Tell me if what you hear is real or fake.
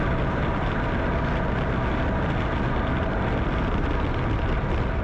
real